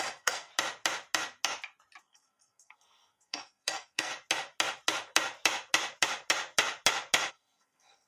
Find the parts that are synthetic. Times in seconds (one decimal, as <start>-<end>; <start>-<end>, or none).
0.0-0.5; 2.0-4.1; 7.3-8.1

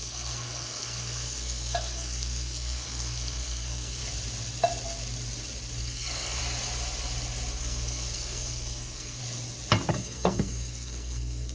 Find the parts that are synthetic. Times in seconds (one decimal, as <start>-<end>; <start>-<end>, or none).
0.0-4.0; 5.8-6.4; 7.6-9.2; 9.9-11.5

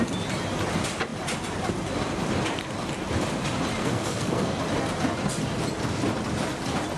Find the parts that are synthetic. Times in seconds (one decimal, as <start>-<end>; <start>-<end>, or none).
3.8-4.6

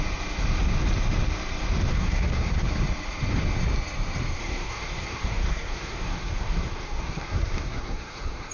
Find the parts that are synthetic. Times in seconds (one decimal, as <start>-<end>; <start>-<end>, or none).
1.9-2.7; 4.4-8.5

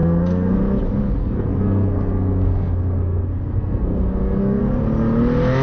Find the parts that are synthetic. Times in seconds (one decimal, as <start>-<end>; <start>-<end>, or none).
0.0-0.6; 1.2-4.6

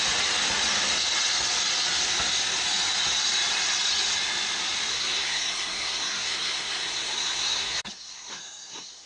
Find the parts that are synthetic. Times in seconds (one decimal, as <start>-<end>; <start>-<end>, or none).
4.9-9.1